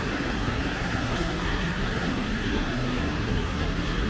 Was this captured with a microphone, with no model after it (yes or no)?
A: no